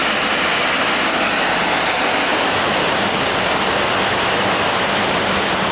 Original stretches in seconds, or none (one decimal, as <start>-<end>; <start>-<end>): 0.0-5.7